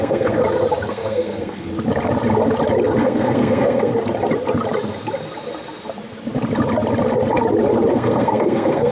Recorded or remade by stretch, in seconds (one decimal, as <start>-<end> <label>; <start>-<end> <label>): 0.0-0.4 remade; 0.4-0.9 recorded; 0.9-1.7 remade; 1.7-3.0 recorded; 3.0-3.9 remade; 3.9-7.9 recorded; 7.9-8.9 remade

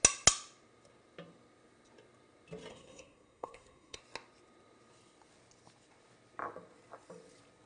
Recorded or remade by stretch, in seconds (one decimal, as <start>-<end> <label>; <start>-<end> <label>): 0.0-2.7 recorded; 2.7-4.0 remade; 4.0-7.7 recorded